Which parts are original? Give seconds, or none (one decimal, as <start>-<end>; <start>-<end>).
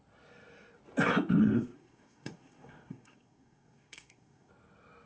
0.0-1.4; 4.5-5.1